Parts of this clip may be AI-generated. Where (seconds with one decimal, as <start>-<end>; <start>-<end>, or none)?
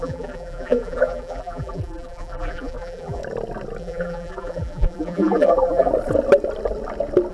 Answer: 0.0-3.2; 3.8-5.9